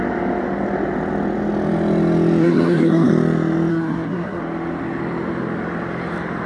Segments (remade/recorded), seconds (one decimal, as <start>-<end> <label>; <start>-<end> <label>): 0.0-2.4 recorded; 2.4-3.1 remade; 3.1-3.7 recorded; 3.7-4.4 remade; 4.4-6.5 recorded